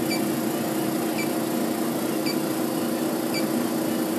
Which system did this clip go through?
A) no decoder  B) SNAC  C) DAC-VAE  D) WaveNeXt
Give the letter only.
A